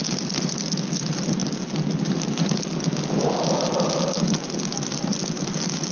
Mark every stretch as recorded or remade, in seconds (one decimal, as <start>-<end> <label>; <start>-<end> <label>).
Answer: 0.0-5.9 recorded